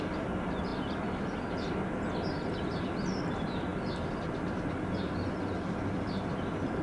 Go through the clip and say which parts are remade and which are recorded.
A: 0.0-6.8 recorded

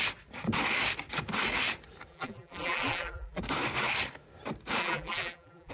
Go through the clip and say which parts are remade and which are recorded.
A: 0.0-2.1 recorded; 2.1-3.4 remade; 3.4-4.8 recorded; 4.8-5.7 remade

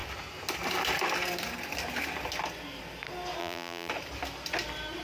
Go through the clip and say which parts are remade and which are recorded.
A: 0.0-3.4 recorded; 3.4-3.9 remade; 3.9-5.0 recorded

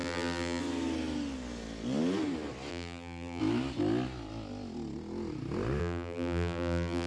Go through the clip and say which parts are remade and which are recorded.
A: 0.0-0.6 remade; 0.6-2.7 recorded; 2.7-3.4 remade; 3.4-5.8 recorded; 5.8-7.1 remade

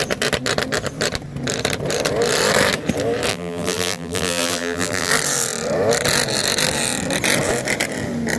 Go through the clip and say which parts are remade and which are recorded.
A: 0.0-3.3 recorded; 3.3-5.1 remade; 5.1-8.4 recorded

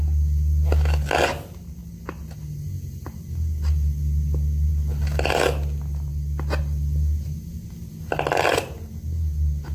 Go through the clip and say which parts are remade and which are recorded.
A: 0.0-9.7 recorded

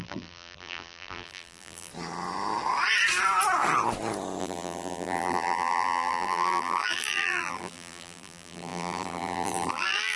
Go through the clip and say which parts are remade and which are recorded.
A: 0.0-1.9 remade; 1.9-4.4 recorded; 4.4-10.2 remade